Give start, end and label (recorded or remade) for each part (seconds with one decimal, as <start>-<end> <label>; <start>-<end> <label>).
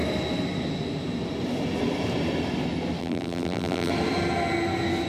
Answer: 0.0-3.0 recorded; 3.0-3.9 remade; 3.9-5.1 recorded